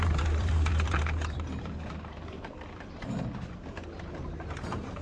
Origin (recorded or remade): remade